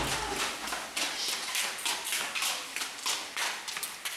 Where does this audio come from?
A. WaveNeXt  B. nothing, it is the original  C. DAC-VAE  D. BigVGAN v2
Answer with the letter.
B